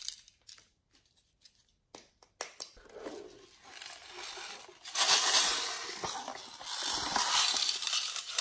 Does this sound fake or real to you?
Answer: real